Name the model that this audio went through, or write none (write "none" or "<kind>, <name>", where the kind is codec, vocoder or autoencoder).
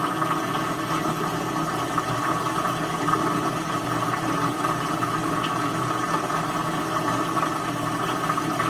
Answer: none